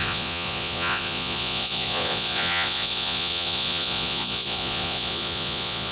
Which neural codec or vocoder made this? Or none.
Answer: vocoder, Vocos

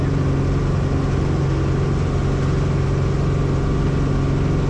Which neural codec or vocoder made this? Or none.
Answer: none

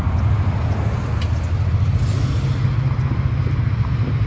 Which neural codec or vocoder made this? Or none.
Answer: none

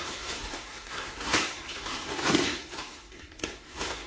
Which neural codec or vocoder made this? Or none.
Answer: codec, SNAC